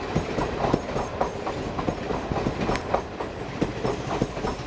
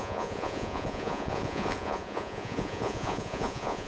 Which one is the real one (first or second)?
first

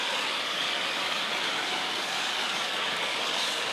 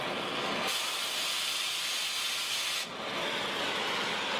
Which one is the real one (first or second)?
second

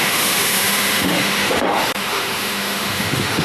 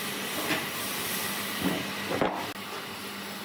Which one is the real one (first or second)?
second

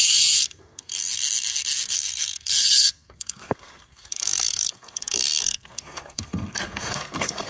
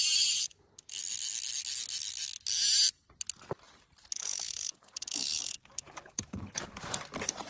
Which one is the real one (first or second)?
second